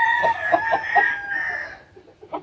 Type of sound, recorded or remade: recorded